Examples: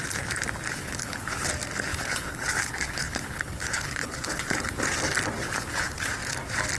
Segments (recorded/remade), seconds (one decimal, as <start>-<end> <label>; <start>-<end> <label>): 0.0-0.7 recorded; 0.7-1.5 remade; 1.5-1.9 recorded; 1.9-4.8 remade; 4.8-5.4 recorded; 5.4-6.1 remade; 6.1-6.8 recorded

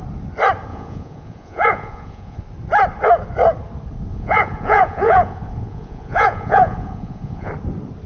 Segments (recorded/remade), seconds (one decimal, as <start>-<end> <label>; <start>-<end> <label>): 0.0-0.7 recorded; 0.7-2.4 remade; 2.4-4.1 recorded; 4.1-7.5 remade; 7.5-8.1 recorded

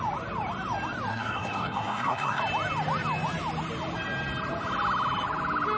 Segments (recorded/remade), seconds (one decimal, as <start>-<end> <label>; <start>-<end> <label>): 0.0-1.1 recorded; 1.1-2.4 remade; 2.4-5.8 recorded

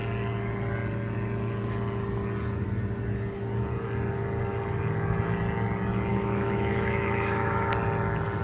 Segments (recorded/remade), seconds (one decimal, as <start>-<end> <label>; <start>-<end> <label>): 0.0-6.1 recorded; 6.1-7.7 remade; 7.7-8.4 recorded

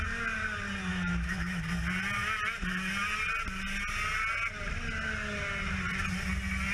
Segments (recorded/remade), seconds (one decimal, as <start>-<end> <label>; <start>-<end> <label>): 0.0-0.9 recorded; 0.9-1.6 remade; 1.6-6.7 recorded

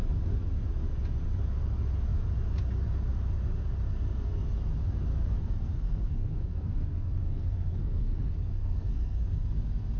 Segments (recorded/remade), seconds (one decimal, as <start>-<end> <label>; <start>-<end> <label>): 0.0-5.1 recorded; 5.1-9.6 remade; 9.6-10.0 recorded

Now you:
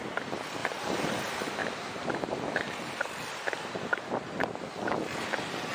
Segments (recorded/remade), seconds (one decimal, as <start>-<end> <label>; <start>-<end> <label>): 0.0-0.6 recorded; 0.6-1.1 remade; 1.1-1.6 recorded; 1.6-3.0 remade; 3.0-5.7 recorded

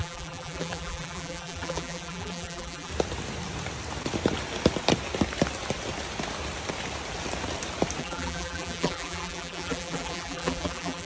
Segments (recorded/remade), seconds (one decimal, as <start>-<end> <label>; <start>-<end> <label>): 0.0-2.9 remade; 2.9-8.0 recorded; 8.0-11.0 remade